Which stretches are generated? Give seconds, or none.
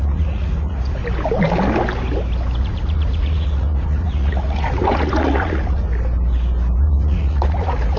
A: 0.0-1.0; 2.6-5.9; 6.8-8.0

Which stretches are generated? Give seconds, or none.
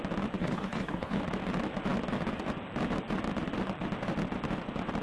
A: 0.4-1.2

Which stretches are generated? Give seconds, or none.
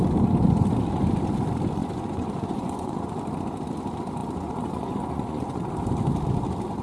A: 1.8-3.2; 4.2-5.7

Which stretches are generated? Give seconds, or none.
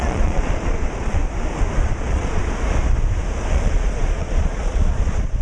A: 0.0-1.2; 1.8-2.4; 3.5-5.4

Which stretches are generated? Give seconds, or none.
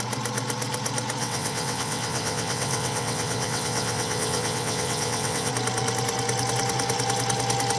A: 1.2-5.5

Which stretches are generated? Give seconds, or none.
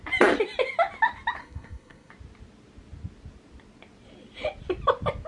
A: 1.4-2.1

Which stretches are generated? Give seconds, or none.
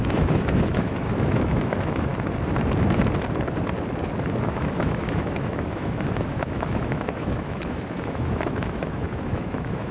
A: 0.0-2.1; 4.4-9.9